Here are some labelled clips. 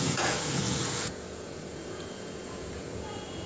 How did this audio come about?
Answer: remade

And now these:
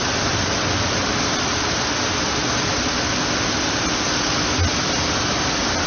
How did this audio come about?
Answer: recorded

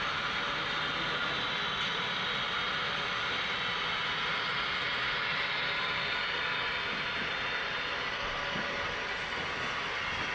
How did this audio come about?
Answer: recorded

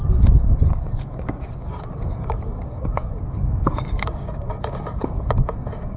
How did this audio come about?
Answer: remade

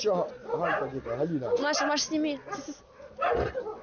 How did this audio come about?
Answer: recorded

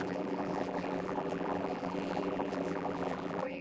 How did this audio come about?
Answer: remade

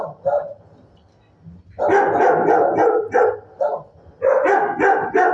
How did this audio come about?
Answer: recorded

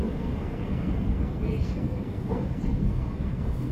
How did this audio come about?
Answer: remade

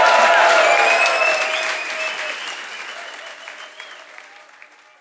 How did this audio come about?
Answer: recorded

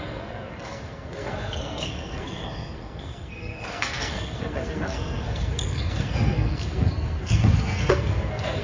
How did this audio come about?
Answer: remade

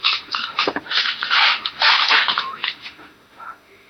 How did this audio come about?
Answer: remade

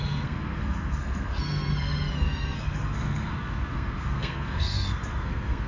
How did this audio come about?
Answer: remade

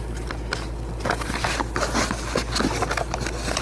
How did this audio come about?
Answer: recorded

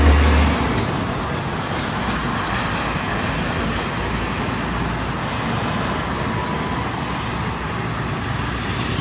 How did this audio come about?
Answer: recorded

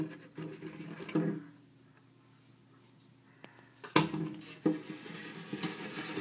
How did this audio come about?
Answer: recorded